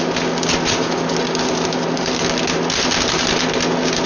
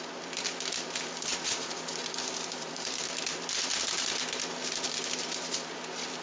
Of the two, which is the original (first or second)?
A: first